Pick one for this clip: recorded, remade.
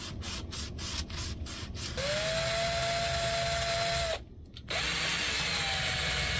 recorded